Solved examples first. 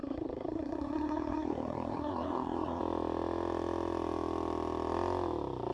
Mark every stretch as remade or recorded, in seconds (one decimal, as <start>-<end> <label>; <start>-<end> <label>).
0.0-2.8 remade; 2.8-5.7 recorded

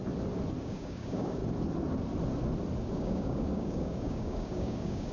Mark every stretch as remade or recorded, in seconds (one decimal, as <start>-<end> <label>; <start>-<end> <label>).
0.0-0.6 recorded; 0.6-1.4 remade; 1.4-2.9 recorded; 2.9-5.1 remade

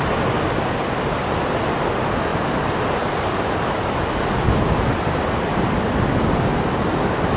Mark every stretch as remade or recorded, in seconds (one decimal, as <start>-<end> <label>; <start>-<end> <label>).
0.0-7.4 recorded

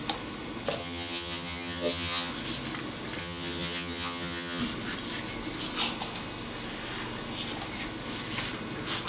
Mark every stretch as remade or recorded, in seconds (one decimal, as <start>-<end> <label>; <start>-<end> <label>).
0.0-0.8 recorded; 0.8-2.3 remade; 2.3-3.2 recorded; 3.2-4.6 remade; 4.6-9.1 recorded

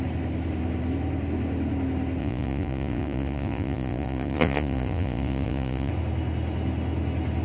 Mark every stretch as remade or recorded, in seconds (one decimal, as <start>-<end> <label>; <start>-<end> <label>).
0.0-2.2 recorded; 2.2-5.9 remade; 5.9-7.4 recorded

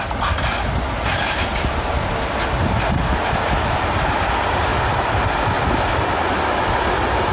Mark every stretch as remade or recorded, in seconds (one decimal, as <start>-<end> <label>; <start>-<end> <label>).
0.0-7.3 recorded